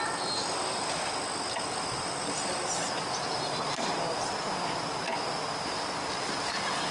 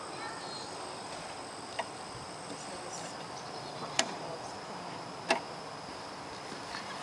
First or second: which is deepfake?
second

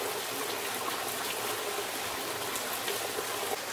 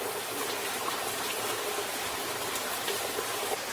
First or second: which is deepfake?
second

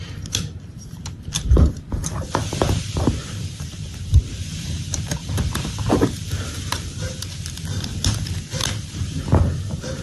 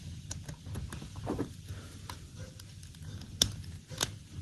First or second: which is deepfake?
first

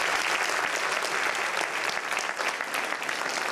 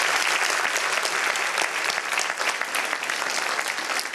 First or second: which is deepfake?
second